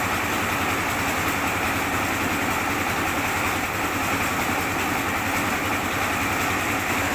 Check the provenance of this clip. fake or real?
real